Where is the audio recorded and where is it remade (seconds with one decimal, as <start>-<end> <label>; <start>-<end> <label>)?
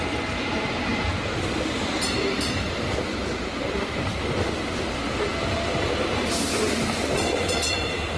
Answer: 0.0-8.2 recorded